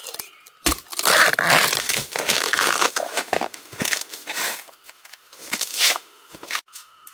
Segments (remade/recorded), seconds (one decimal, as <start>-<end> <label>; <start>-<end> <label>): 0.0-1.8 recorded; 1.8-7.1 remade